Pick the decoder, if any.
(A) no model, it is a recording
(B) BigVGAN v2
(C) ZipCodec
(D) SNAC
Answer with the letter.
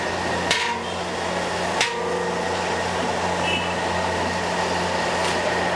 A